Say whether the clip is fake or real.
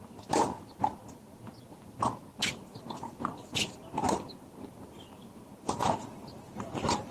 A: real